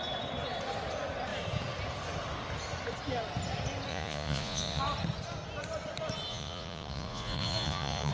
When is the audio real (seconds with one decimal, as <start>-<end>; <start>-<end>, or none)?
0.0-3.9; 4.8-6.3